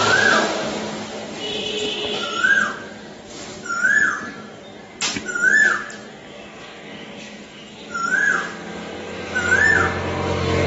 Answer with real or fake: real